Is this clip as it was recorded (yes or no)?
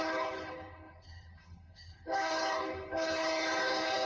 no